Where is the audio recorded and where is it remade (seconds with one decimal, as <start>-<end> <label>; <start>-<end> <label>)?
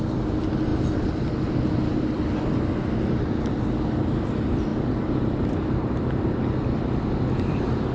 0.0-7.9 recorded